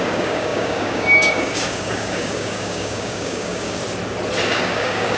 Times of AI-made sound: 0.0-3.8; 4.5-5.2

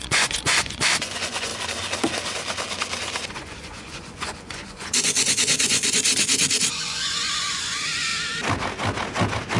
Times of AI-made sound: 0.0-1.5; 3.3-6.1; 6.7-8.1

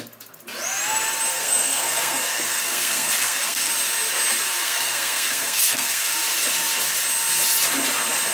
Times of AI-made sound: 1.3-3.7; 4.6-6.2

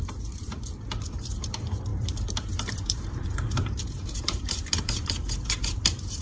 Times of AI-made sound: 0.0-6.2